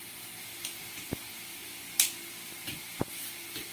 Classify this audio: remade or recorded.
recorded